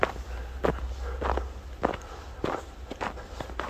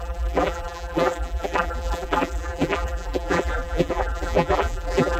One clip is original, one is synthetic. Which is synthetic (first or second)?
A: second